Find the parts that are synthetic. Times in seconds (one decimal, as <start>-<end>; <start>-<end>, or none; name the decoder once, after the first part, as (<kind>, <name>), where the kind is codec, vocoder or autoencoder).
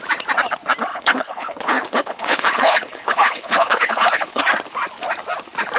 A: 0.9-4.4 (codec, HILCodec)